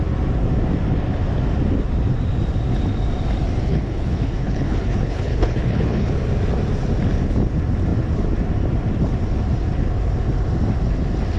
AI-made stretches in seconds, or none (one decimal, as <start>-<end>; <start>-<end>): 3.7-6.1